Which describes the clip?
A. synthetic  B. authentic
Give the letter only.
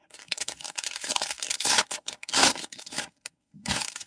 A